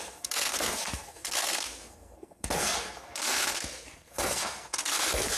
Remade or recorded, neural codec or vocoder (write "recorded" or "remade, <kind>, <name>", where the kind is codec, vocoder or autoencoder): remade, codec, SNAC